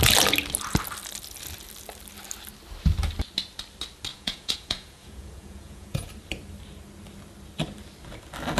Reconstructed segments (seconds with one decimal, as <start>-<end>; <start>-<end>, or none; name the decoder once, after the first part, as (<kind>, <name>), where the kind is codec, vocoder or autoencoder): 4.1-6.1 (vocoder, Vocos)